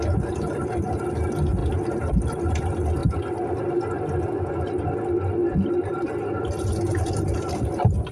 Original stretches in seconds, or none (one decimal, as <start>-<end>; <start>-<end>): 0.0-8.1